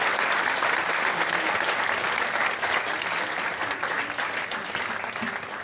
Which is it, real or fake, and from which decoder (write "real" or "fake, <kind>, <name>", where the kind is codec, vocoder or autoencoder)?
real